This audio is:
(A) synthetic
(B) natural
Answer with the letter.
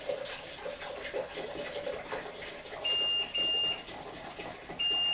B